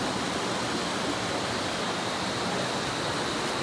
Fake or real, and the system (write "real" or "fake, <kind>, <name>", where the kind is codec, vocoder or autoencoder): real